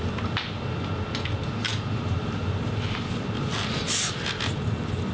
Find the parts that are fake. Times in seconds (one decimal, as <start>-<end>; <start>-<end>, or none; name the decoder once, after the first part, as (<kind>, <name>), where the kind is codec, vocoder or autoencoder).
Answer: 1.7-5.1 (vocoder, BigVGAN v2)